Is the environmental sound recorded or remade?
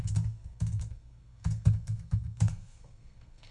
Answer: remade